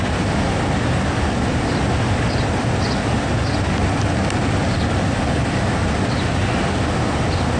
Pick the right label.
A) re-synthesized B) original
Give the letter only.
B